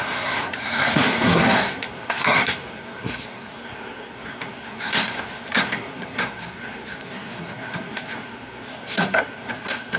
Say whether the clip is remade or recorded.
remade